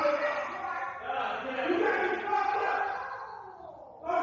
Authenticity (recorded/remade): recorded